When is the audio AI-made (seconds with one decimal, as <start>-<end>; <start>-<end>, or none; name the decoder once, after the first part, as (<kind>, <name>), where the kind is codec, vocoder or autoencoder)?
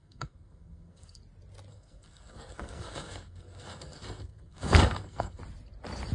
0.0-1.2 (codec, SNAC); 1.7-5.4